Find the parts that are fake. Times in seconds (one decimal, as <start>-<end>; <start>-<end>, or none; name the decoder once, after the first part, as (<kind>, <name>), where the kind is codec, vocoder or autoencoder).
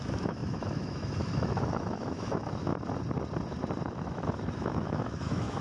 0.0-2.7 (autoencoder, DAC-VAE); 3.8-5.6